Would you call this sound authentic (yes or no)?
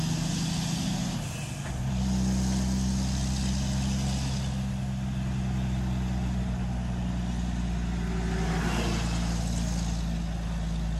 yes